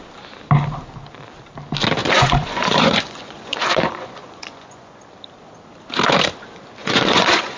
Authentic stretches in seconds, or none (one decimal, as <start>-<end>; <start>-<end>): 0.0-2.0; 5.0-6.8